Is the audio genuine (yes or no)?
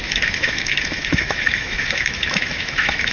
no